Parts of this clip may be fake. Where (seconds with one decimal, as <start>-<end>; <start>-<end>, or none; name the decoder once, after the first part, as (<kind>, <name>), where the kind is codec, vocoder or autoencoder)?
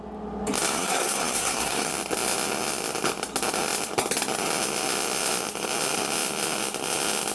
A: 0.7-1.9 (codec, SNAC)